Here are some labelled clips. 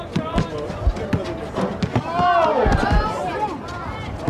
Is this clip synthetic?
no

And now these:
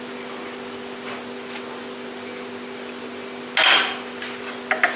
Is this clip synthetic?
no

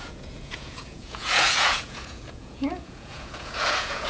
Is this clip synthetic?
yes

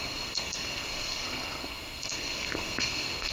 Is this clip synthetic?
yes